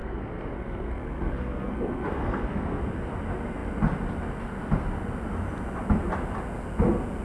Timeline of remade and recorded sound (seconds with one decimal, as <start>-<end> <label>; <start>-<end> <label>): 0.0-2.8 remade; 2.8-7.2 recorded